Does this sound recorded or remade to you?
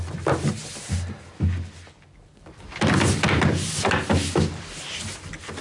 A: remade